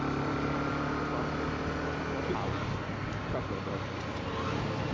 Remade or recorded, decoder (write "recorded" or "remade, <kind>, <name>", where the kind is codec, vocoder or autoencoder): recorded